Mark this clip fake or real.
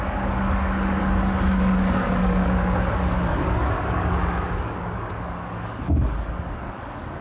fake